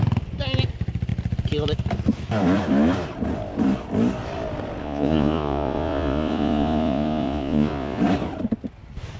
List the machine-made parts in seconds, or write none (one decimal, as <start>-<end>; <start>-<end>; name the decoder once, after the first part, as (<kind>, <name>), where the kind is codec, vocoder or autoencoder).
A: 4.8-8.0 (vocoder, Vocos)